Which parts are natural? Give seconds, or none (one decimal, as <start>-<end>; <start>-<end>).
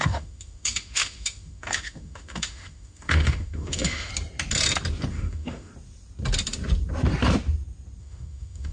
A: 4.1-5.1; 5.7-8.0